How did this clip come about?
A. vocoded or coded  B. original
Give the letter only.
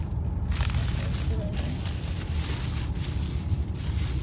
B